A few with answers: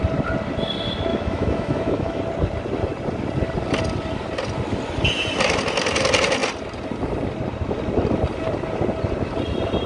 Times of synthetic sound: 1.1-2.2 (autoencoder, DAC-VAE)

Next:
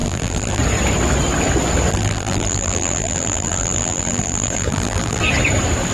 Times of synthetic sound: 0.0-0.6 (vocoder, BigVGAN v2); 1.9-5.2

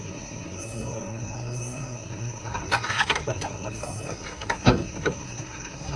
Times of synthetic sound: 0.0-6.0 (codec, SNAC)